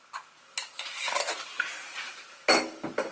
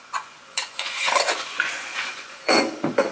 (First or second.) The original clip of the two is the first